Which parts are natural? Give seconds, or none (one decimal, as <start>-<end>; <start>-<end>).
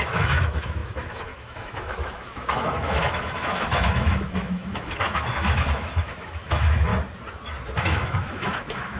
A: 6.9-7.8